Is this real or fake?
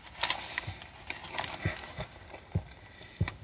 real